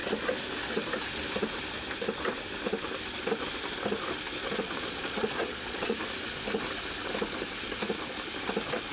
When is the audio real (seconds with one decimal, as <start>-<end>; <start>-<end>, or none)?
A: 0.0-4.4; 6.0-8.9

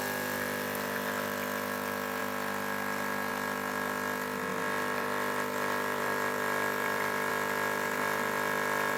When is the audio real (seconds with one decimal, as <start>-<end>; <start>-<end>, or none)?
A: 0.0-4.5; 7.3-9.0

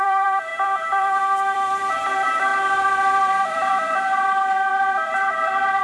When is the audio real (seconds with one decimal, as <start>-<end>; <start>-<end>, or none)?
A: none

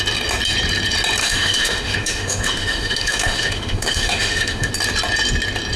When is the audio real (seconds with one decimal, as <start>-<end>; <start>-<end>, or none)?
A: 0.0-1.2; 4.7-5.8

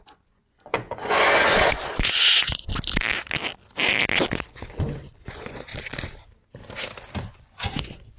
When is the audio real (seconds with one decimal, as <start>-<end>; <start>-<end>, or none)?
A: 2.7-4.5; 5.7-7.2

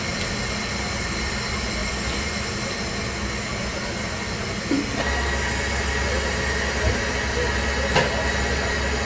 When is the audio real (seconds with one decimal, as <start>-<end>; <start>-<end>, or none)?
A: 0.0-0.6; 1.2-9.1

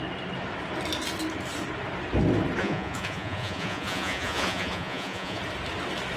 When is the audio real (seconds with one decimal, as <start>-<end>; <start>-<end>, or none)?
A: 0.0-2.6; 5.4-6.2